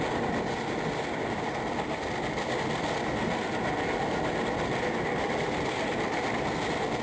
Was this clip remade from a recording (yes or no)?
no